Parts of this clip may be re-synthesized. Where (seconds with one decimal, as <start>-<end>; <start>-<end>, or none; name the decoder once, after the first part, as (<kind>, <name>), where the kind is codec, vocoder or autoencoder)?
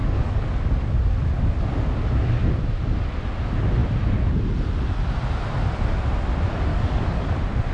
0.0-0.6 (codec, DAC); 6.7-7.3